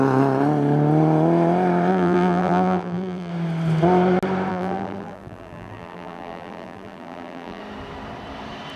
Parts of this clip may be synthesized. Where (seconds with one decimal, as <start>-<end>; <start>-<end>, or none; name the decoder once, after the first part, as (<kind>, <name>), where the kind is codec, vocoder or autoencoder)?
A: 1.9-3.3 (vocoder, BigVGAN v2); 4.5-7.6